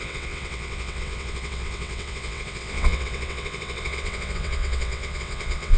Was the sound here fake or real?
fake